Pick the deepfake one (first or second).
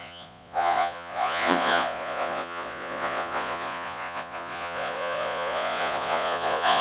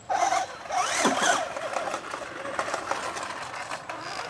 first